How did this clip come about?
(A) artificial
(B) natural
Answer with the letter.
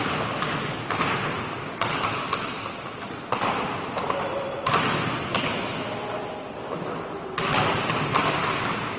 B